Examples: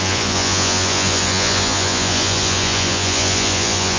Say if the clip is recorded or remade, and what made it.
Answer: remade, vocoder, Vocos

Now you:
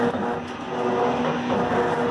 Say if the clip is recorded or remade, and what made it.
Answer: recorded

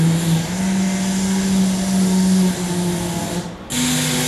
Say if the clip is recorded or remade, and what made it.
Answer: recorded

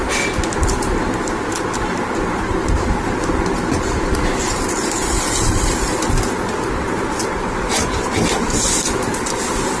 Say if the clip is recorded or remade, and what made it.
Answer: recorded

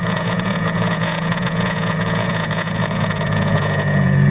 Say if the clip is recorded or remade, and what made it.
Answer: remade, vocoder, Vocos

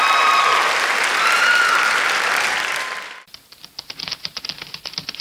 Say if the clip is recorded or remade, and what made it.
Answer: recorded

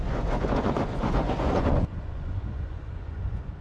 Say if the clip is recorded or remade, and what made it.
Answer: remade, vocoder, Vocos